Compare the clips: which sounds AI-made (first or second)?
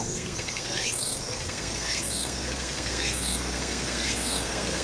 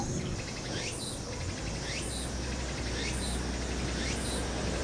first